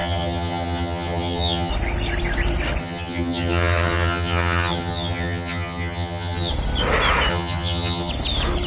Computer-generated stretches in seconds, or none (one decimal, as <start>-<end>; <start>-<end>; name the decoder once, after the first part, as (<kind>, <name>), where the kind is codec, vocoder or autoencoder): 0.0-1.7 (vocoder, HiFi-GAN); 2.8-6.5; 7.3-8.1